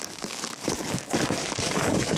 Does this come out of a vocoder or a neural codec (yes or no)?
yes